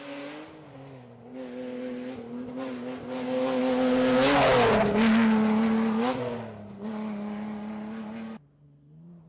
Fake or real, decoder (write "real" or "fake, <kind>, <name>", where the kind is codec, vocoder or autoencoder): real